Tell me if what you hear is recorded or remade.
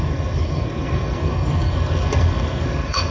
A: remade